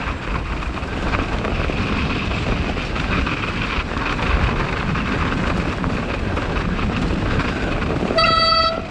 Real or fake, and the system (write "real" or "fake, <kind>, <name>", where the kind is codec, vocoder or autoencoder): real